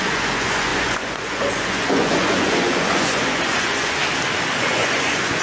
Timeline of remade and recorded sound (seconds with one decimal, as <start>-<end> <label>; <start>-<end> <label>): 0.0-4.0 remade; 4.0-4.6 recorded; 4.6-5.4 remade